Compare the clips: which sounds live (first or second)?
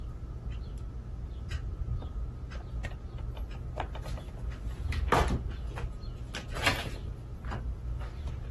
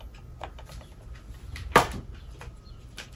first